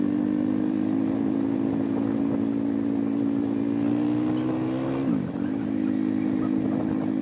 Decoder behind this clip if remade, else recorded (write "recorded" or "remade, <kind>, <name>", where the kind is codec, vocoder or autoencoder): recorded